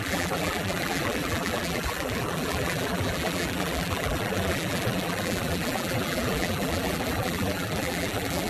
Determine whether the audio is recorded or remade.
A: remade